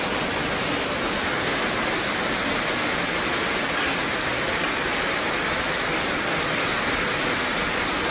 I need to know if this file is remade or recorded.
recorded